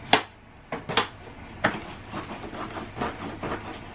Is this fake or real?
real